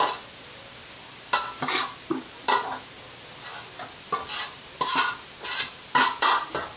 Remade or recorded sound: recorded